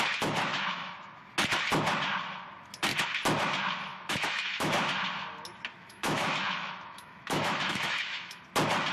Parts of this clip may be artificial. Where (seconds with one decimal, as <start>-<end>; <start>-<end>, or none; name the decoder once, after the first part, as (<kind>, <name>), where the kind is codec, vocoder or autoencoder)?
0.5-1.3 (autoencoder, DAC-VAE); 3.9-4.7; 5.7-8.4